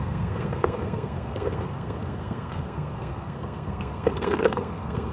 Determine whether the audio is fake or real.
fake